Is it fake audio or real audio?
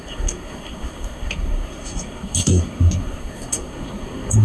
fake